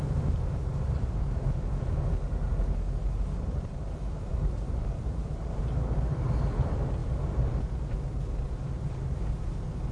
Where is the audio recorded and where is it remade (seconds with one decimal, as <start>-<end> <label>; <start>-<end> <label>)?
0.0-4.3 recorded; 4.3-5.6 remade; 5.6-9.9 recorded